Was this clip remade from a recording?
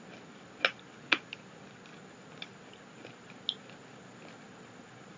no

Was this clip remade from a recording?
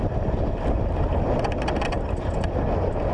no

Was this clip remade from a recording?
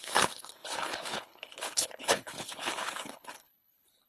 yes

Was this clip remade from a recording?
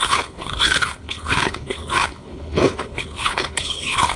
yes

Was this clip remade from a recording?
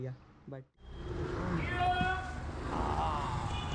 no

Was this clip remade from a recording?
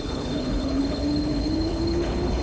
yes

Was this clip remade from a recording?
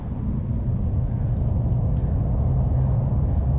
no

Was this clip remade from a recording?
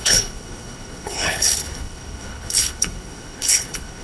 yes